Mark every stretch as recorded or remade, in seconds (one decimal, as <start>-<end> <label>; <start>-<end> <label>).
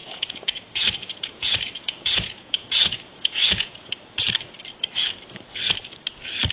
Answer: 0.0-3.9 remade; 3.9-6.5 recorded